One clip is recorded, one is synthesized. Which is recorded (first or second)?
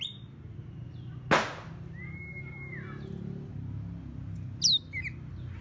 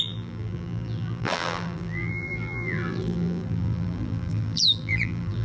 first